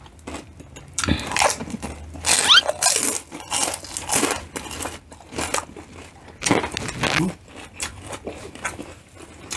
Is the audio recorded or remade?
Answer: recorded